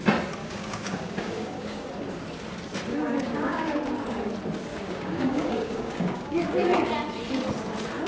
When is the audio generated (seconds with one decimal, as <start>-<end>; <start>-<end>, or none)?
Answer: 0.4-1.9; 2.9-4.3; 4.7-6.9